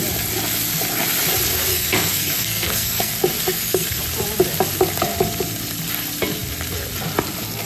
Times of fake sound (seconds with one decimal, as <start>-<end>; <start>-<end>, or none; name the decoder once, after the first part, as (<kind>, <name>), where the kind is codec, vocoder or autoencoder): 1.7-3.1 (codec, SNAC); 3.5-4.0